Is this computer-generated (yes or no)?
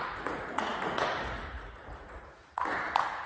yes